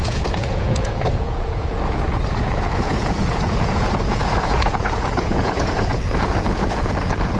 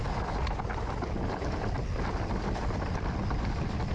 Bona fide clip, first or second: second